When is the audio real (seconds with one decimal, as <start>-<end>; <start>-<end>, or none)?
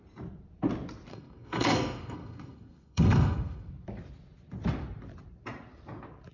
0.0-1.1; 3.7-6.3